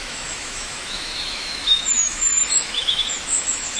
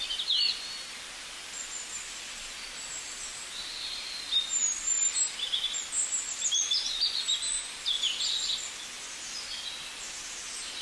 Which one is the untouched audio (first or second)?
second